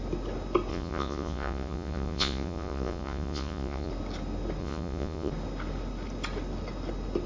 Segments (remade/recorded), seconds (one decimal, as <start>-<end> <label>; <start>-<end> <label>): 0.0-0.7 recorded; 0.7-3.9 remade; 3.9-4.6 recorded; 4.6-5.3 remade; 5.3-7.3 recorded